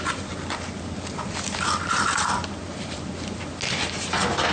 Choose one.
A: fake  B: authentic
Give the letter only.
B